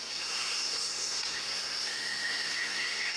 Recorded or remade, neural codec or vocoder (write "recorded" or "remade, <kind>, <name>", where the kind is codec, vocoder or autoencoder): remade, codec, SNAC